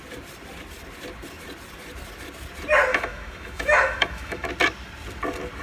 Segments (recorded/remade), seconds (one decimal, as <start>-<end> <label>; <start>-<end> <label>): 0.0-2.9 recorded; 2.9-4.5 remade; 4.5-5.6 recorded